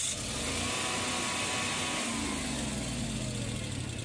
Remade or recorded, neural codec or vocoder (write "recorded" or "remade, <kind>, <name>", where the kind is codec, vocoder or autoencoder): recorded